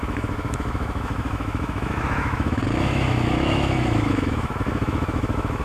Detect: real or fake fake